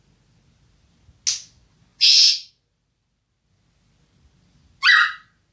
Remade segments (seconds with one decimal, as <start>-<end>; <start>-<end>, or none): none